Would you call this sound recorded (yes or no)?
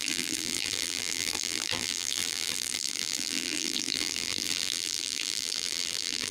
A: no